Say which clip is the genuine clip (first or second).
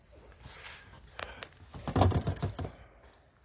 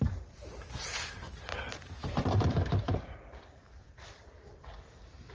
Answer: first